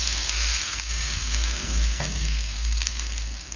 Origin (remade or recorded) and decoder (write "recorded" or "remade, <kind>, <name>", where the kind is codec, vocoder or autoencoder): remade, codec, SNAC